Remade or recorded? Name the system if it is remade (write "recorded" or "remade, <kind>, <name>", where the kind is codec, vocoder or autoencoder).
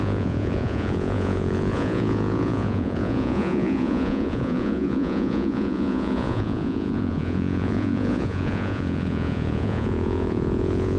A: remade, vocoder, Vocos